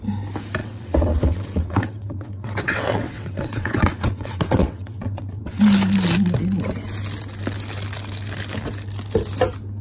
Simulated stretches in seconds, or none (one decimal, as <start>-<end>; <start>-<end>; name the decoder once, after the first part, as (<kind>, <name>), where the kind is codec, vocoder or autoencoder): 0.6-5.6 (vocoder, WaveNeXt)